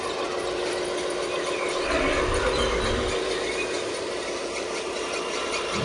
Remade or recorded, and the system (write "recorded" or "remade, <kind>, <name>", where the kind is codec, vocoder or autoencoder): recorded